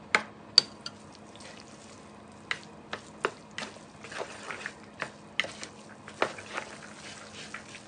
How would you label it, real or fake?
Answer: real